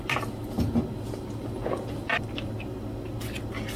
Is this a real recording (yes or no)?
yes